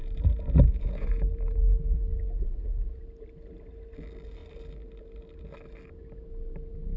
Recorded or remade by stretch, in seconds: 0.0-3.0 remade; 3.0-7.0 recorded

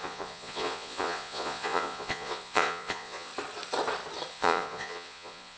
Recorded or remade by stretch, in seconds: 0.0-3.3 remade; 3.3-4.3 recorded; 4.3-5.6 remade

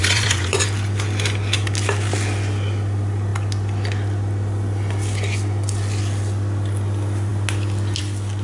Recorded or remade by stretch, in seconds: 0.0-0.6 remade; 0.6-8.4 recorded

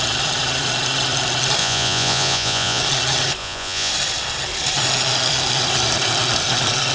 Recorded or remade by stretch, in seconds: 0.0-1.6 recorded; 1.6-2.8 remade; 2.8-3.4 recorded; 3.4-3.9 remade; 3.9-6.9 recorded

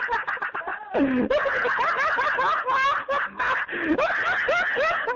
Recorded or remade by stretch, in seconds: 0.0-5.2 recorded

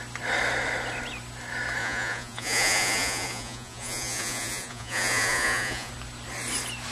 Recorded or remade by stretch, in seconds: 0.0-1.8 recorded; 1.8-5.9 remade; 5.9-6.9 recorded